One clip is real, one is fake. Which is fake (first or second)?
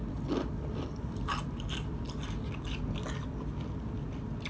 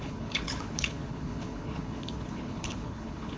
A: second